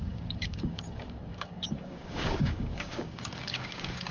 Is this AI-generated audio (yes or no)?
yes